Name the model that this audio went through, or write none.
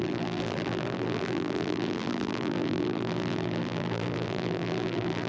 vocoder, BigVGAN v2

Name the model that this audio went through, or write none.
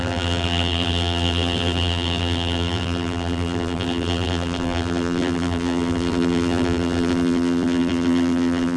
vocoder, BigVGAN v2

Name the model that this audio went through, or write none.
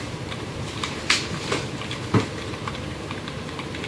vocoder, BigVGAN v2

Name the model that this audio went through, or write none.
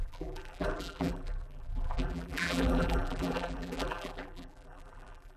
vocoder, BigVGAN v2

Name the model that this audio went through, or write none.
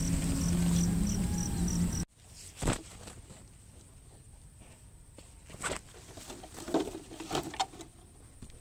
none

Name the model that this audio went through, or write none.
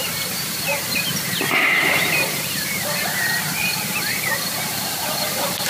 vocoder, BigVGAN v2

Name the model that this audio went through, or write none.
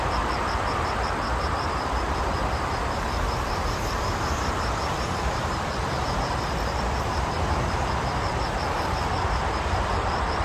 vocoder, BigVGAN v2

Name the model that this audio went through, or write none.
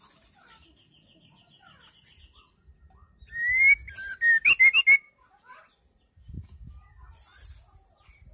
none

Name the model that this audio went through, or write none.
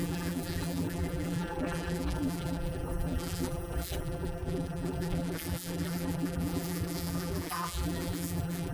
vocoder, BigVGAN v2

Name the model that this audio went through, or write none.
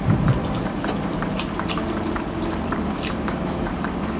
vocoder, BigVGAN v2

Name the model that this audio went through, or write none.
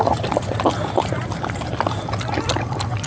vocoder, BigVGAN v2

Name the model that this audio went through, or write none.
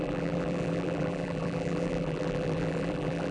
vocoder, BigVGAN v2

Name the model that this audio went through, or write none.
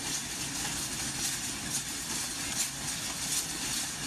none